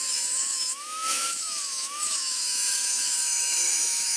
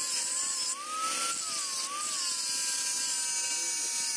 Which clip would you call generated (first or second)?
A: first